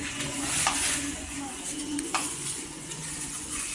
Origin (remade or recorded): remade